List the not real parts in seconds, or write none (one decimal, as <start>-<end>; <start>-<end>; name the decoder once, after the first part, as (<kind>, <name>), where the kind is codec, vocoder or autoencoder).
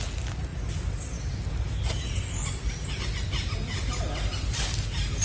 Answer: none